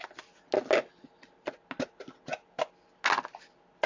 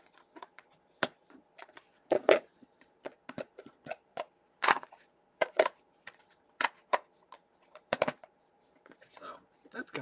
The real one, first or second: first